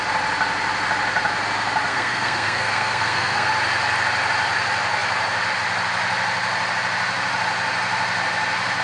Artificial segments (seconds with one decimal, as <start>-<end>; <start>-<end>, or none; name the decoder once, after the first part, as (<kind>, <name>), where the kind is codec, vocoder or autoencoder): 1.9-3.5 (codec, SNAC)